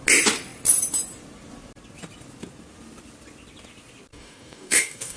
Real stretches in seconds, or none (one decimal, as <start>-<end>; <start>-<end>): 0.0-4.1